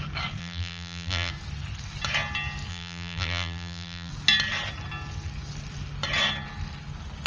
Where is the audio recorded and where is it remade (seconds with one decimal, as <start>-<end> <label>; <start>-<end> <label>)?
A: 0.0-0.4 recorded; 0.4-1.3 remade; 1.3-2.7 recorded; 2.7-4.1 remade; 4.1-7.3 recorded